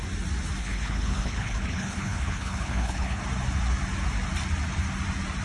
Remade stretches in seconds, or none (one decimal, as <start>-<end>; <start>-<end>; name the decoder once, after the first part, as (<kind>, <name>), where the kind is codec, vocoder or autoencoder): 0.6-3.2 (codec, HILCodec)